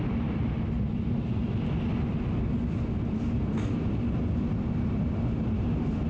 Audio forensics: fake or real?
real